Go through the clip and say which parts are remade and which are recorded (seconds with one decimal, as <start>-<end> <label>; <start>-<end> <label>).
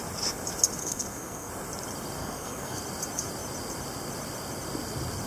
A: 0.0-0.8 recorded; 0.8-1.5 remade; 1.5-2.2 recorded; 2.2-2.8 remade; 2.8-5.3 recorded